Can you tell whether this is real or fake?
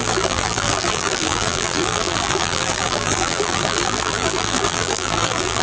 fake